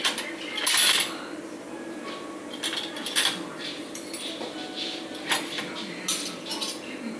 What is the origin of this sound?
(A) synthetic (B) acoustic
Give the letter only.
B